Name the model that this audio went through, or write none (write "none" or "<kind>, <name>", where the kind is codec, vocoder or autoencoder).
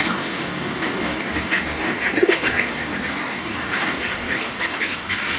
codec, DAC